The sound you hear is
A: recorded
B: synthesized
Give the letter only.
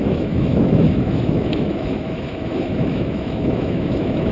B